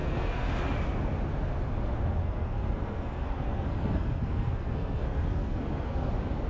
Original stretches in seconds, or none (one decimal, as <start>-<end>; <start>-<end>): 0.5-2.2; 6.1-6.5